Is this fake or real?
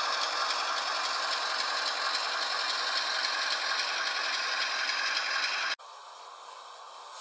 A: real